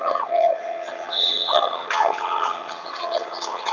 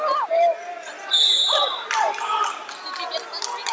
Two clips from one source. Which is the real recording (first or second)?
second